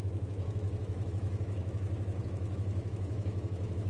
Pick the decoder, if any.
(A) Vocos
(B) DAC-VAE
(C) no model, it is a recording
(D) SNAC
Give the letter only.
B